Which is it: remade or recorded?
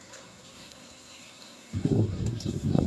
remade